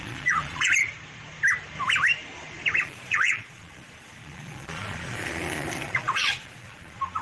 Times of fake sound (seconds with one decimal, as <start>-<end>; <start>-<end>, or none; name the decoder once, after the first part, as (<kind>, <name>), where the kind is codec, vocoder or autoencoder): 0.0-0.7 (vocoder, Vocos); 2.8-7.2